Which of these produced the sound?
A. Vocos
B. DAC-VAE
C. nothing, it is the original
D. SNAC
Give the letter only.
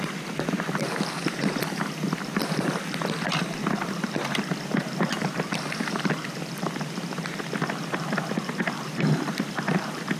C